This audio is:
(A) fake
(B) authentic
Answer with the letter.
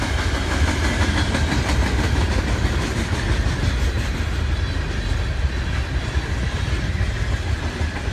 B